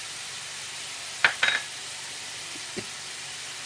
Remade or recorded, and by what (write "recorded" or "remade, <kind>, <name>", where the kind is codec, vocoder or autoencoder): remade, vocoder, BigVGAN v2